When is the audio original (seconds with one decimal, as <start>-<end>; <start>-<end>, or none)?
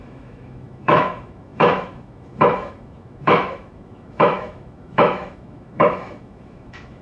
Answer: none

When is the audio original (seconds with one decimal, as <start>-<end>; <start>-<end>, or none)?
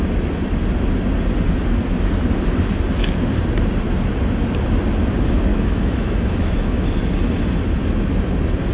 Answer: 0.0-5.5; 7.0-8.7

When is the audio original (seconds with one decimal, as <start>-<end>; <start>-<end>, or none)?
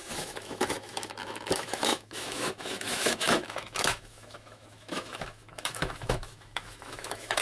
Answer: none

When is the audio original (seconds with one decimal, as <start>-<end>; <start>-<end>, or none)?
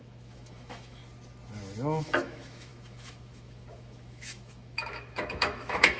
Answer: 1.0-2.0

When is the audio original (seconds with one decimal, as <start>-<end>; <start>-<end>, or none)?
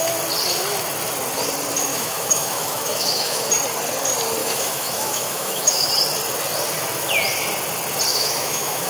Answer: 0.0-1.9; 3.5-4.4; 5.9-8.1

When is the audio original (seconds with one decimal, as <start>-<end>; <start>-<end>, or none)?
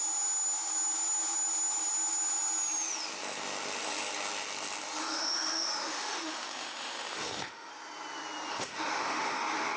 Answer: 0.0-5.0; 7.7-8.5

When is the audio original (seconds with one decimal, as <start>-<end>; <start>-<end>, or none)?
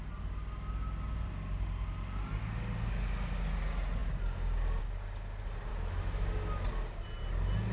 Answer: 0.0-5.7; 6.3-7.7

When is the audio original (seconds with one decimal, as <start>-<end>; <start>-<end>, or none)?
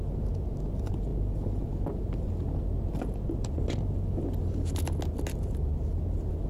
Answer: 0.0-6.5